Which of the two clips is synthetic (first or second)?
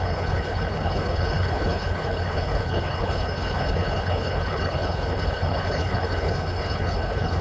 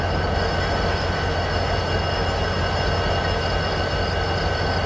first